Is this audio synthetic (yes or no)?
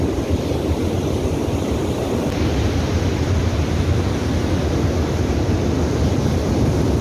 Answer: no